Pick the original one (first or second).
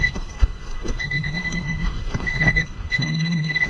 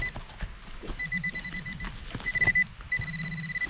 second